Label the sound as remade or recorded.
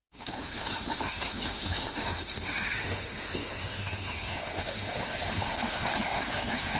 remade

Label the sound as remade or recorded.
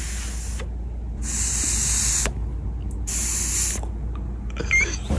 recorded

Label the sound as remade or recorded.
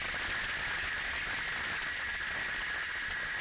recorded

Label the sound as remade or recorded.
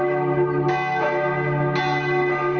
recorded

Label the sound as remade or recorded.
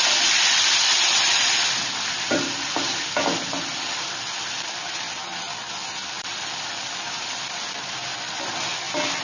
recorded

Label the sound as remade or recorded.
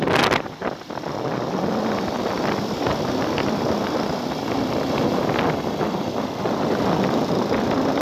recorded